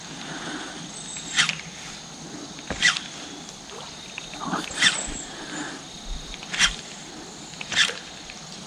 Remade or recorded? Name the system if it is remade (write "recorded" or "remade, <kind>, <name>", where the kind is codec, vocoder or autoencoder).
recorded